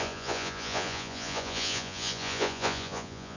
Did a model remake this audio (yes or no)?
yes